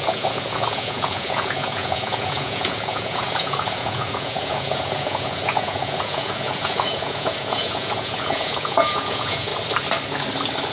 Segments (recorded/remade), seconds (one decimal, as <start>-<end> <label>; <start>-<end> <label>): 0.0-9.5 remade; 9.5-10.7 recorded